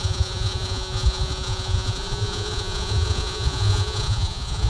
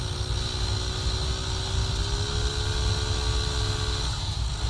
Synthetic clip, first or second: first